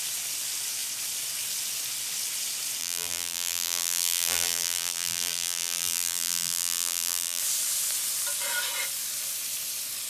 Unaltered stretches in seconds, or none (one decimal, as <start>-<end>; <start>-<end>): 0.0-2.8; 7.4-10.1